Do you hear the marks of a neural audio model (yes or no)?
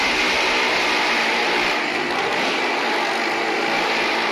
no